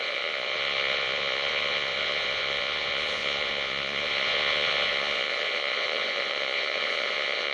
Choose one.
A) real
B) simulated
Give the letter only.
B